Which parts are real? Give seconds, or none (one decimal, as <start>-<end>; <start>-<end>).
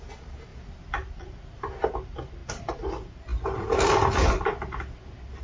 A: 0.0-0.5; 1.7-5.4